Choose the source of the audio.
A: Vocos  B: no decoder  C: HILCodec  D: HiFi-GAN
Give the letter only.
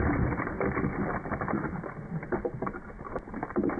B